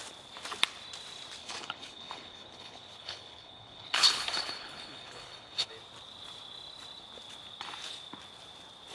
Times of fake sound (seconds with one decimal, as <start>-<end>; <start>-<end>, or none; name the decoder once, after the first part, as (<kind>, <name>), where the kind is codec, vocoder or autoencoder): 1.4-5.7 (codec, HILCodec)